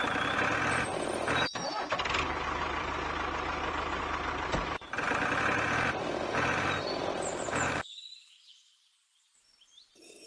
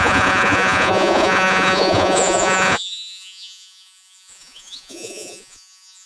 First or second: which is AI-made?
second